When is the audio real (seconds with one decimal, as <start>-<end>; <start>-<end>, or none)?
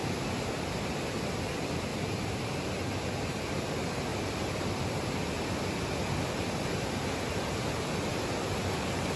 1.2-1.9; 3.4-4.1; 4.6-8.1